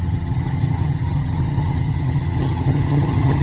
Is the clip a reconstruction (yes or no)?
yes